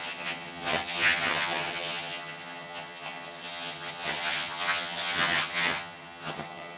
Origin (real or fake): fake